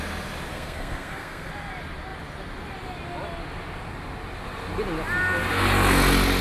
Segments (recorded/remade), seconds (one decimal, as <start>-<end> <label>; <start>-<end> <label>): 0.0-0.5 recorded; 0.5-1.5 remade; 1.5-6.4 recorded